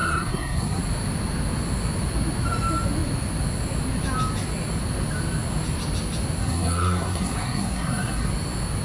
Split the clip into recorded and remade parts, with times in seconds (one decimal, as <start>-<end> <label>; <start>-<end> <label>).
0.0-0.8 remade; 0.8-6.4 recorded; 6.4-8.3 remade; 8.3-8.8 recorded